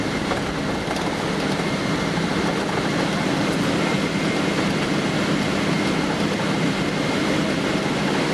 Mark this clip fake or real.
real